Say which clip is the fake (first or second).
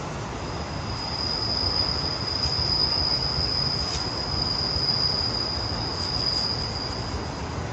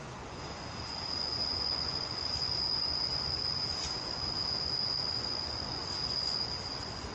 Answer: second